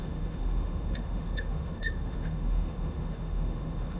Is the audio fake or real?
fake